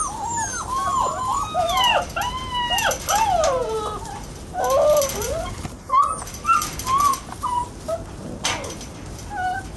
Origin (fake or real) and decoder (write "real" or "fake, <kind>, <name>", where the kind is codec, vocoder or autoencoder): real